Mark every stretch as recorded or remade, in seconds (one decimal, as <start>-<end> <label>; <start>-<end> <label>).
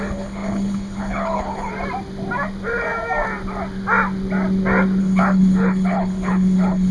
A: 0.0-1.7 remade; 1.7-5.0 recorded; 5.0-6.9 remade